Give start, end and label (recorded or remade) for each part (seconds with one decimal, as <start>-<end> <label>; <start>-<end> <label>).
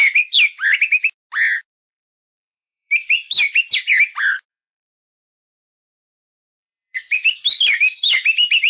0.0-1.9 recorded; 1.9-3.9 remade; 3.9-4.5 recorded; 4.5-8.7 remade